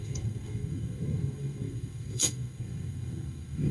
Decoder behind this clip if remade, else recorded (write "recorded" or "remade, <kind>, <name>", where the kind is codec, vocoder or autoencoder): remade, codec, SNAC